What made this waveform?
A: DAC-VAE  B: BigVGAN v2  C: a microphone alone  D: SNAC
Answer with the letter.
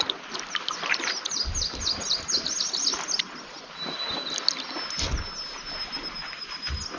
C